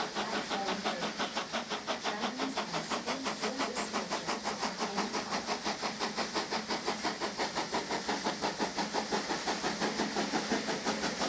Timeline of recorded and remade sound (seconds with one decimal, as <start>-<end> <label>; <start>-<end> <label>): 0.0-11.3 recorded